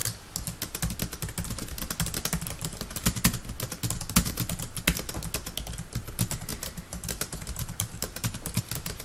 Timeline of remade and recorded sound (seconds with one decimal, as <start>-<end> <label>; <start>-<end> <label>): 0.0-6.5 recorded; 6.5-8.6 remade; 8.6-9.0 recorded